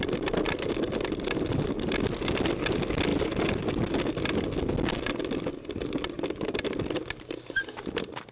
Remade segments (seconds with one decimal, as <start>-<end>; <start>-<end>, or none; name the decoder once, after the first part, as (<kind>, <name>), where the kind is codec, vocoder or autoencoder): none